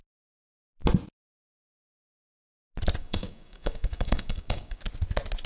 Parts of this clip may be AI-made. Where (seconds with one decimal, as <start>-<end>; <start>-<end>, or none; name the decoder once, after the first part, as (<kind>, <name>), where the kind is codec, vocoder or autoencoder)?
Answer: 3.0-4.8 (codec, DAC)